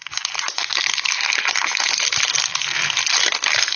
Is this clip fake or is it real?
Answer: real